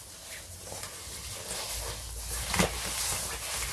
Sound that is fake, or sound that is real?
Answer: real